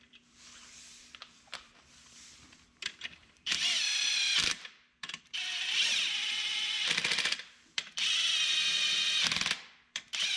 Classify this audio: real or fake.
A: fake